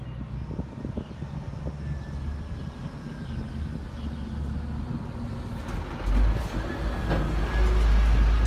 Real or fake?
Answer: real